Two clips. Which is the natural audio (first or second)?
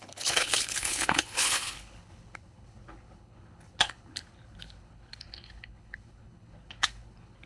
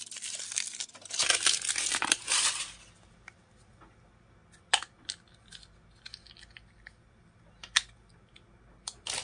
second